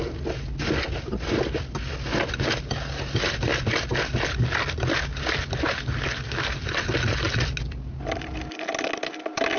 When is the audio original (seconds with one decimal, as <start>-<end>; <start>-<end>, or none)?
0.0-9.6